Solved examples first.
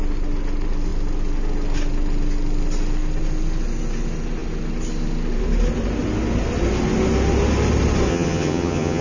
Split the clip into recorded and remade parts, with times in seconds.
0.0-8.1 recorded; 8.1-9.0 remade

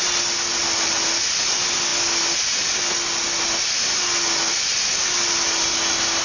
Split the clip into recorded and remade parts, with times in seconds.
0.0-6.2 recorded

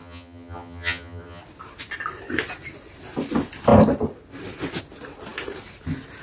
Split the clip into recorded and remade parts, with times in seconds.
0.0-1.4 remade; 1.4-6.2 recorded

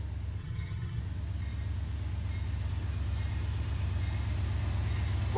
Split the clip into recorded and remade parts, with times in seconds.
0.0-0.4 recorded; 0.4-1.0 remade; 1.0-5.4 recorded

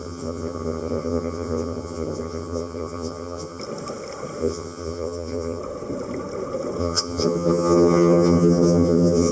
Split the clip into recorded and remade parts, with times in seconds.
0.0-3.6 remade; 3.6-4.4 recorded; 4.4-5.6 remade; 5.6-6.8 recorded; 6.8-9.3 remade

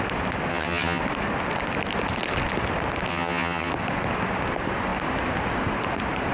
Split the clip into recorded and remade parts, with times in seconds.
0.0-0.5 recorded; 0.5-1.0 remade; 1.0-3.1 recorded; 3.1-3.7 remade; 3.7-6.3 recorded

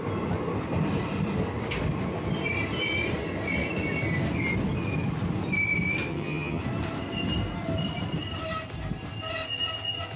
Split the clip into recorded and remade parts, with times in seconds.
0.0-6.1 recorded; 6.1-6.6 remade; 6.6-10.2 recorded